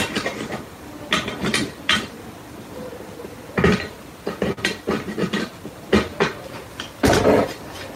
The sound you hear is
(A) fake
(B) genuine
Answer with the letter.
B